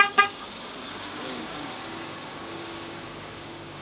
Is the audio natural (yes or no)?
no